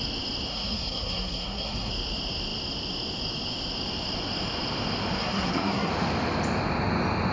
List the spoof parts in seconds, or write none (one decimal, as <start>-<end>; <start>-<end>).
0.5-1.9; 5.2-5.9

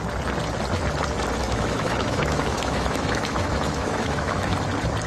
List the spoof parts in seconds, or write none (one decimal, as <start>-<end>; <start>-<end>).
1.4-4.5

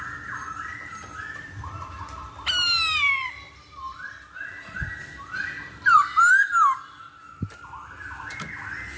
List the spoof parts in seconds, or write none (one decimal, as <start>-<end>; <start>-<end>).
0.7-4.1; 5.0-6.3

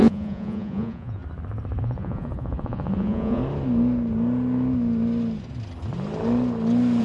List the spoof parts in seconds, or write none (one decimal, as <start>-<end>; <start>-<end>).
0.0-1.2; 1.8-3.4